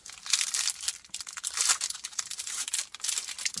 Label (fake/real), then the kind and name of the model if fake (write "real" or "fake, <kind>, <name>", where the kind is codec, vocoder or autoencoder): fake, vocoder, BigVGAN v2